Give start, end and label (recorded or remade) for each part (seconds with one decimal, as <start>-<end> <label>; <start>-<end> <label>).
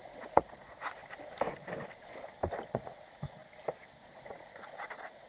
0.0-1.0 remade; 1.0-2.7 recorded; 2.7-3.4 remade; 3.4-4.0 recorded; 4.0-5.3 remade